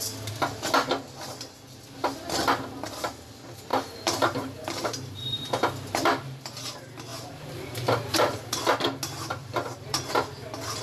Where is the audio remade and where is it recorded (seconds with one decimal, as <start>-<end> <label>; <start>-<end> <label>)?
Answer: 0.0-3.7 recorded; 3.7-5.5 remade; 5.5-7.1 recorded; 7.1-8.6 remade; 8.6-9.4 recorded; 9.4-10.1 remade; 10.1-10.8 recorded